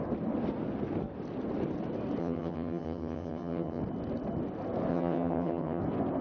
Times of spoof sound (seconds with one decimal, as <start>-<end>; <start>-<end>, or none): 2.2-3.8; 4.9-5.8